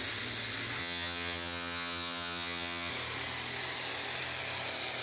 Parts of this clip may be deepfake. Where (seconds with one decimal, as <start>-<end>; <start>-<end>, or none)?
0.8-2.9

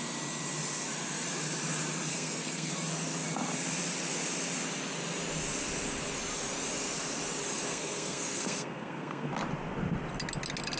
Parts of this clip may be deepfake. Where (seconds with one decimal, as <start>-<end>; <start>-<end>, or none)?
2.1-2.7; 7.7-9.3

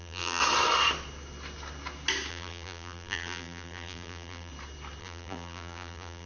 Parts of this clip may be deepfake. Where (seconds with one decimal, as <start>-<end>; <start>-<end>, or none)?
0.0-0.4; 2.3-4.5; 5.0-6.3